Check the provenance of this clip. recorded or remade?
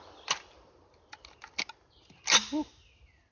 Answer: recorded